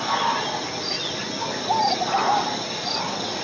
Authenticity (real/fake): real